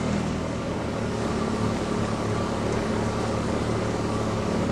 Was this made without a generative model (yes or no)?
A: no